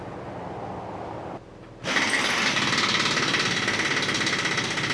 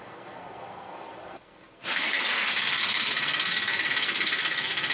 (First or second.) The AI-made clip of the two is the second